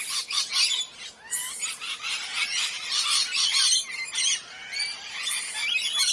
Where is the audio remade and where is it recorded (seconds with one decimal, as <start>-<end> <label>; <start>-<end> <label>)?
0.0-6.1 recorded